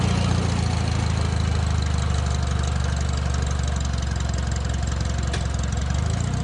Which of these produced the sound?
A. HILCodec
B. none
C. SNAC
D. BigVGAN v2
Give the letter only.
B